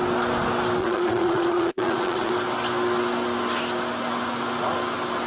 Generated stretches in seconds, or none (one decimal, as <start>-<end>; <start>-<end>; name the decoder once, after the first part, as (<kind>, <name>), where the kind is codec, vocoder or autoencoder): 0.8-2.3 (vocoder, Vocos)